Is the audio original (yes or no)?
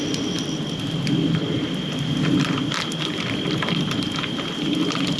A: yes